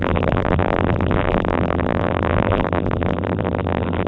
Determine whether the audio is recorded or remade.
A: remade